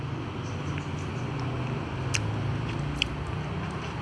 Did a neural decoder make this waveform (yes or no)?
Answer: no